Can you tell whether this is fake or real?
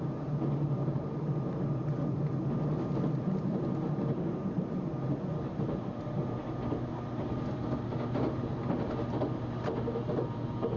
real